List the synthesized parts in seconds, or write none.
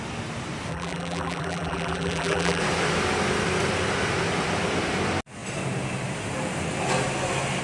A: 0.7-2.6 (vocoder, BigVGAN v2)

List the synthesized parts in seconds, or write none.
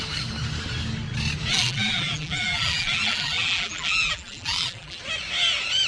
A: 1.5-5.0 (vocoder, BigVGAN v2)